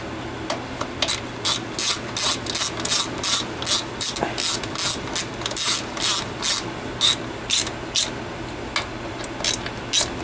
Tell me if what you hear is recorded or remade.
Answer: recorded